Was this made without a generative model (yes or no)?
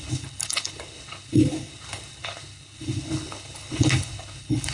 no